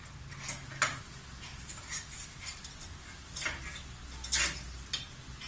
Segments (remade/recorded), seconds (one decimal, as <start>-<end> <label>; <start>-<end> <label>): 0.0-5.5 recorded